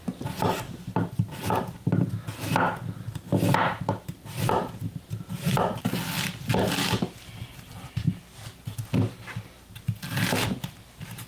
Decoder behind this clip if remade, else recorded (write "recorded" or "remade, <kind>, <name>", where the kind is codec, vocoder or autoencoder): recorded